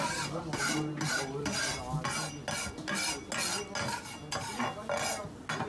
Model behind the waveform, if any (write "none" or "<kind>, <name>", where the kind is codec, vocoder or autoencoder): none